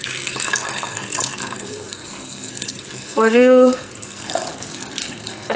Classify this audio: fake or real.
fake